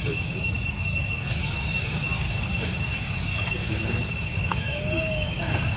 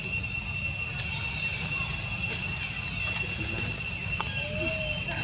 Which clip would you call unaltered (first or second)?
second